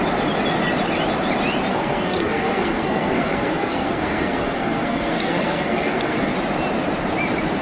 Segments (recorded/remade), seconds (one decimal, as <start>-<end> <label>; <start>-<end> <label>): 0.0-1.7 recorded; 1.7-6.3 remade; 6.3-7.6 recorded